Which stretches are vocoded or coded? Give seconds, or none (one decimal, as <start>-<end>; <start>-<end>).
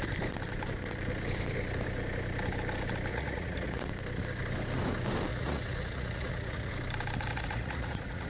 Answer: 3.1-3.9; 5.3-6.7; 7.3-8.3